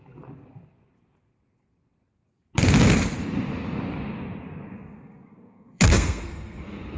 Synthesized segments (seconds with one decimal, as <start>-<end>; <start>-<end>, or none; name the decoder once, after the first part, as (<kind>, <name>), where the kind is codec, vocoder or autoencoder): 5.3-7.0 (codec, SNAC)